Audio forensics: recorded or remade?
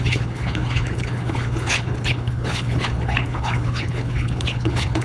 remade